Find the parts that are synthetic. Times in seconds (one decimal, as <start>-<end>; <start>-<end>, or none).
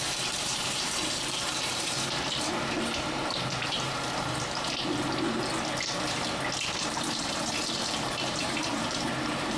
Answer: 0.0-4.8; 6.6-9.6